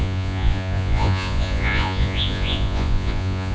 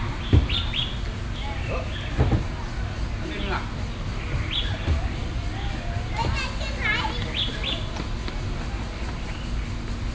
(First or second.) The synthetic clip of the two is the first